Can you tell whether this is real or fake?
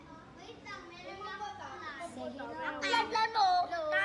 real